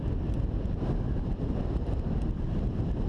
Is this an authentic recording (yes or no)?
yes